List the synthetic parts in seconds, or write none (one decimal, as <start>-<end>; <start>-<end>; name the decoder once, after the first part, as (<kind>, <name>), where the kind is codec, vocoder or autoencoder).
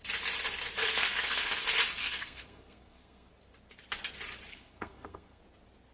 0.8-1.5 (codec, SNAC); 2.0-3.3; 4.5-5.4